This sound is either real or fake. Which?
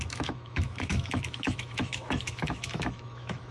fake